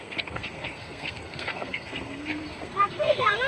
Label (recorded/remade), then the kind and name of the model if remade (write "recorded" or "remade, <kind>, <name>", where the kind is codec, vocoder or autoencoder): remade, codec, SNAC